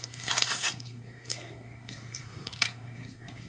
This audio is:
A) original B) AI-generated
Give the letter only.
B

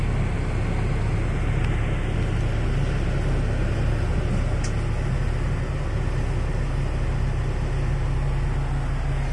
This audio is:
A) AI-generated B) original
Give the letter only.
B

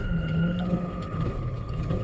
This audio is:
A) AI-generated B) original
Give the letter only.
A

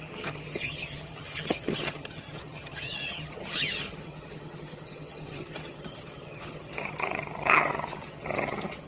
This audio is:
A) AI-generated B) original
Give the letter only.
A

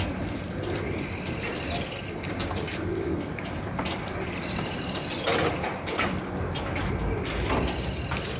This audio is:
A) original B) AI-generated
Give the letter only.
B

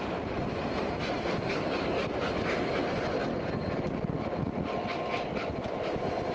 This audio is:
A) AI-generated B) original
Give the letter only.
B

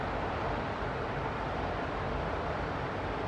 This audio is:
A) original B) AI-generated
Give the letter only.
A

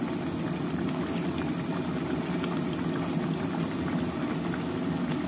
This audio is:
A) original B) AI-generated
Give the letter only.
A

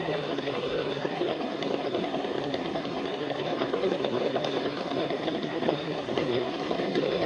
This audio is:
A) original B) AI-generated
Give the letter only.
B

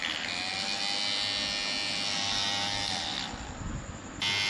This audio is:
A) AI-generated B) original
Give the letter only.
B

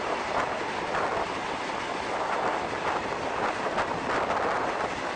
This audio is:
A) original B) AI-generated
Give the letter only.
A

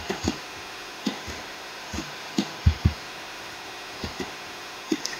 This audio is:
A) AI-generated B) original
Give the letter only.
A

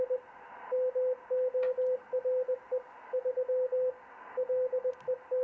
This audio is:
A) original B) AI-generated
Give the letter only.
A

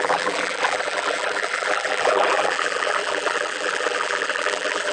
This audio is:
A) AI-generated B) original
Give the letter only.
A